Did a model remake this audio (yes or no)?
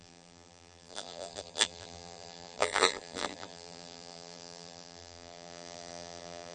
yes